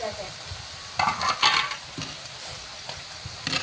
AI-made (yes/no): no